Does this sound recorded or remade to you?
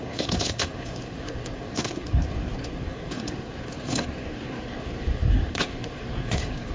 remade